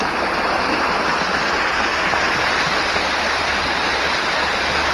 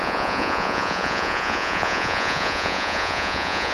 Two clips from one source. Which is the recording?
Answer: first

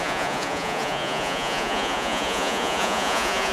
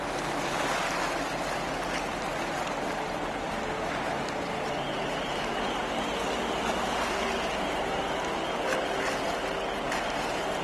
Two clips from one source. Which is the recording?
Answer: second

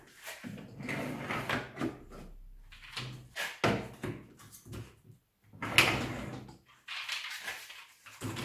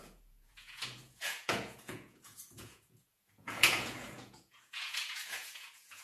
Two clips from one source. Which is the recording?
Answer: first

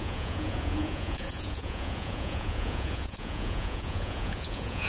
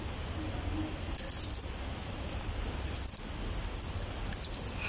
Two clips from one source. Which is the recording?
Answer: second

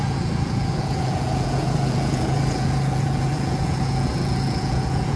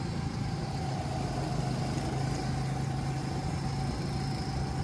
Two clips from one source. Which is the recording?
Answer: second